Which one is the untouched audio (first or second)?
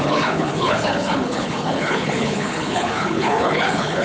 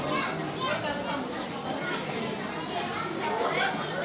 second